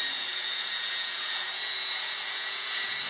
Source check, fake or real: fake